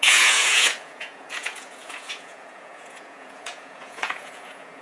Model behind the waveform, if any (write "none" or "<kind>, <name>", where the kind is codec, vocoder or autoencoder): vocoder, Vocos